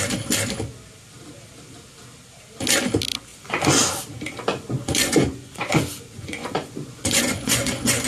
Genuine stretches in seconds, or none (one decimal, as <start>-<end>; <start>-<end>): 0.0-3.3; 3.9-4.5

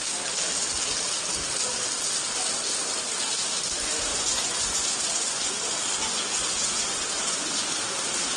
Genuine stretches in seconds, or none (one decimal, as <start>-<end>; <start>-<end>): 0.0-4.1; 5.5-6.0; 7.7-8.4

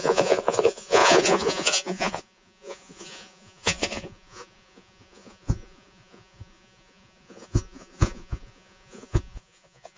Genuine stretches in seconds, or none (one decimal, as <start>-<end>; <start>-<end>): none

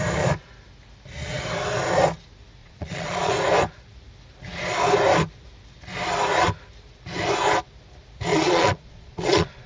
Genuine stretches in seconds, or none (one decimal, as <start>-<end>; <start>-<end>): 0.0-2.6; 3.3-8.3